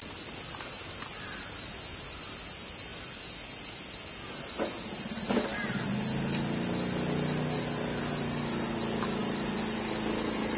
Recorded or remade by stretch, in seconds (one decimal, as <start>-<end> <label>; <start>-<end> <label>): 0.0-10.6 recorded